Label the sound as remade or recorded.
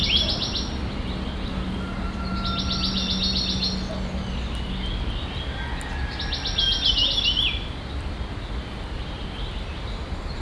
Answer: recorded